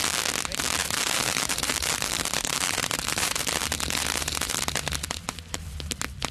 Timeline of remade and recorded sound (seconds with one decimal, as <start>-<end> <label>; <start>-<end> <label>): 0.0-0.8 recorded; 0.8-4.6 remade; 4.6-6.3 recorded